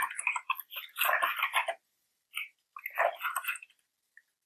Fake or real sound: real